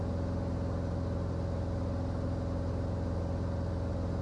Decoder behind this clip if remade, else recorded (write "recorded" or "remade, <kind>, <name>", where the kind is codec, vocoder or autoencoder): recorded